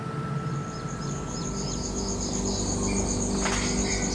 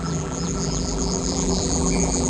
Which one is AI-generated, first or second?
second